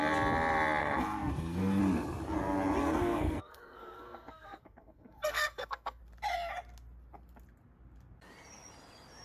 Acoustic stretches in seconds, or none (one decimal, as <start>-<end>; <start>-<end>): 0.0-0.8; 1.8-2.8; 6.0-9.2